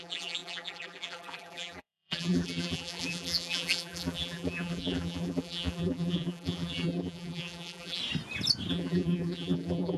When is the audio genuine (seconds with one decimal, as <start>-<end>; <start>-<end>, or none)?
8.0-8.7